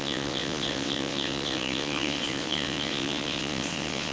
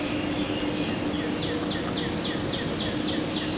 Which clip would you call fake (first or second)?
first